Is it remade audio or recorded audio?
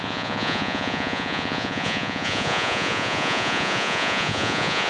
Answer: remade